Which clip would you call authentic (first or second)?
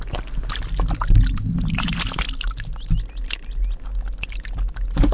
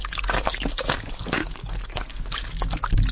first